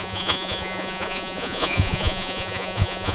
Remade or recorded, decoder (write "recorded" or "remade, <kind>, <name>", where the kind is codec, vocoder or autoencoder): remade, vocoder, Vocos